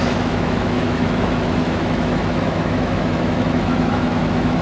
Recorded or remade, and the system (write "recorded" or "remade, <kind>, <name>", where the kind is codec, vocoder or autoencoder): remade, autoencoder, DAC-VAE